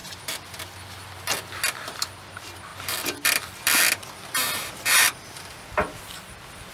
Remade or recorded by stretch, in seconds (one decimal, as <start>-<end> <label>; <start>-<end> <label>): 0.0-0.6 remade; 0.6-2.7 recorded; 2.7-6.0 remade; 6.0-6.7 recorded